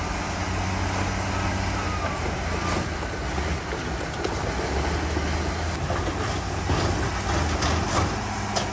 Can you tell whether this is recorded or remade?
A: recorded